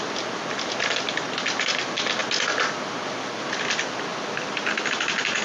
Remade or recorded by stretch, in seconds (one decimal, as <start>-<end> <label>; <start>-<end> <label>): 0.0-5.4 recorded